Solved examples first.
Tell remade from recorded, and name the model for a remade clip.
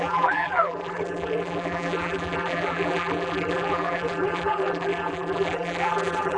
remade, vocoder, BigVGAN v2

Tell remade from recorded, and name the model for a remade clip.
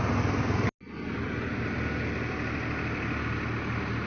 recorded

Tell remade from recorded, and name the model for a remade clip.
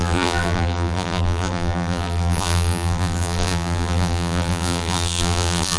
remade, vocoder, BigVGAN v2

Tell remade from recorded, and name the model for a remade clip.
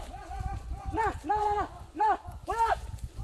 remade, vocoder, Vocos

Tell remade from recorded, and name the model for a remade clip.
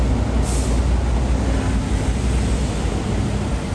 recorded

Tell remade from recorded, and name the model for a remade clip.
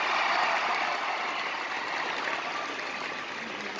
recorded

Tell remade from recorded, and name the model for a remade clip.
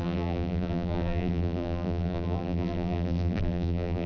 remade, vocoder, BigVGAN v2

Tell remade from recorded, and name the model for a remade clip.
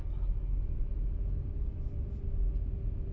recorded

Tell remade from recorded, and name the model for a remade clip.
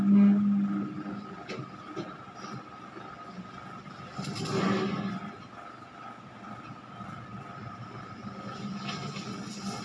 recorded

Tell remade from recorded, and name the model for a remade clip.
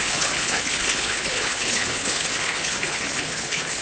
remade, codec, HILCodec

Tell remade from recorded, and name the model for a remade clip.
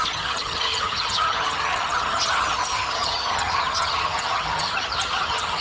remade, vocoder, HiFi-GAN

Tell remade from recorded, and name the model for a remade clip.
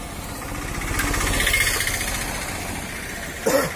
recorded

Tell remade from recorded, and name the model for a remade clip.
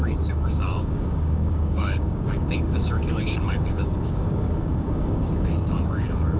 remade, codec, DAC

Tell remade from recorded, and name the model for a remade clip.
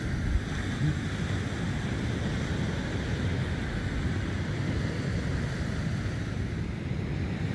recorded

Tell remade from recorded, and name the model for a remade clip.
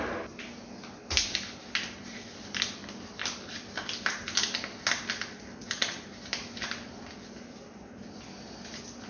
recorded